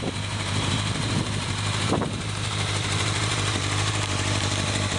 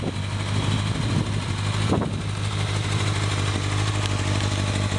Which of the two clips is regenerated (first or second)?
first